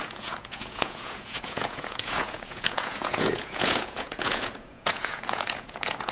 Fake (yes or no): yes